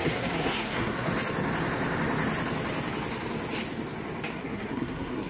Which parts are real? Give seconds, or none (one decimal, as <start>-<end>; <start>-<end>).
1.1-4.3